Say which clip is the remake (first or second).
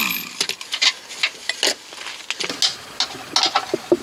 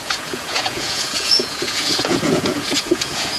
second